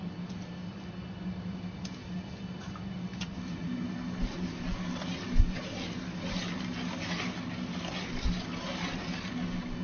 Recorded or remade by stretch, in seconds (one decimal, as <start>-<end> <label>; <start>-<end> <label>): 0.0-9.8 recorded